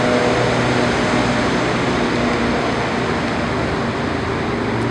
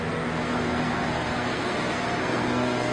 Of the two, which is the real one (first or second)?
first